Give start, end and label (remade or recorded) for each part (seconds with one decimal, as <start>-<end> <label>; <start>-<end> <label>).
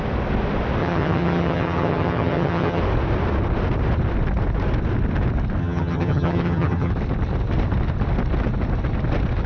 0.0-0.8 recorded; 0.8-2.8 remade; 2.8-5.6 recorded; 5.6-6.9 remade; 6.9-9.5 recorded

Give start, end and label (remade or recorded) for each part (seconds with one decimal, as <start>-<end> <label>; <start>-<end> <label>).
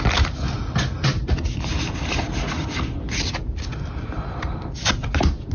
0.0-5.5 recorded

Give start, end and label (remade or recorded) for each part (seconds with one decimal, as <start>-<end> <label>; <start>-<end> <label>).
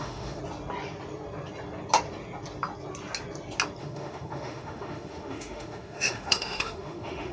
0.0-0.4 remade; 0.4-3.8 recorded; 3.8-7.3 remade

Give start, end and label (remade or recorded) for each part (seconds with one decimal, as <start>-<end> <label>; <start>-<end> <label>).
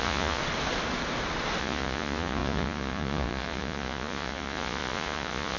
0.0-0.4 remade; 0.4-1.6 recorded; 1.6-5.6 remade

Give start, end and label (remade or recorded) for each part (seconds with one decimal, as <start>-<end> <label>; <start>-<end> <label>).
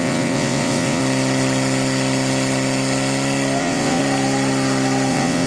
0.0-1.0 remade; 1.0-3.6 recorded; 3.6-4.0 remade; 4.0-5.1 recorded; 5.1-5.5 remade